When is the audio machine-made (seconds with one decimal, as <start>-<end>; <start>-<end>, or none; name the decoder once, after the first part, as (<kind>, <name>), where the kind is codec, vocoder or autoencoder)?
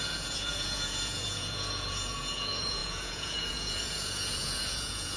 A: 0.0-5.2 (vocoder, Vocos)